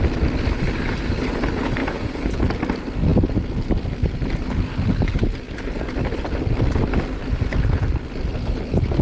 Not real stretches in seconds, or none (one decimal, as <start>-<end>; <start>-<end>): 1.8-2.4